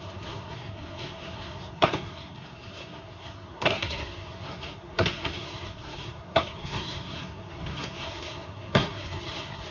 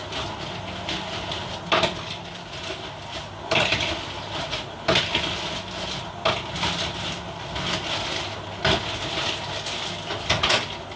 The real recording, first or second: second